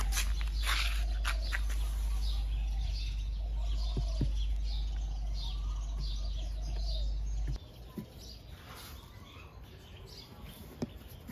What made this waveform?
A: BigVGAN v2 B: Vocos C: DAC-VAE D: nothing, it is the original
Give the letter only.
D